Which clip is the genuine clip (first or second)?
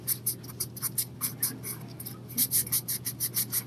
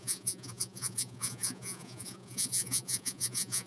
first